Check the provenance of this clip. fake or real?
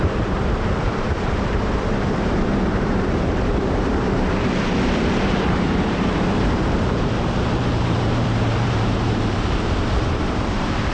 fake